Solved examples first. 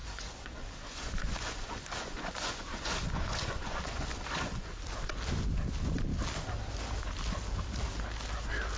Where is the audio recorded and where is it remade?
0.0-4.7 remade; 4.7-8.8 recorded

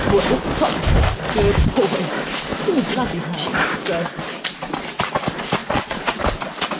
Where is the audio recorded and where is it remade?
0.0-5.6 recorded; 5.6-6.2 remade; 6.2-6.8 recorded